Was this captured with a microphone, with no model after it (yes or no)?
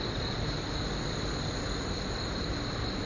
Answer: yes